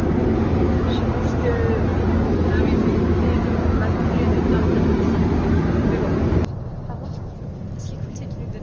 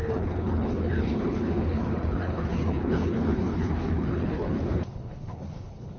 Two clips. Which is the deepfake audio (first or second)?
second